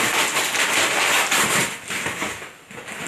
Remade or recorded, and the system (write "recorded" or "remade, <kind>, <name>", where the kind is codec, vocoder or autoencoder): recorded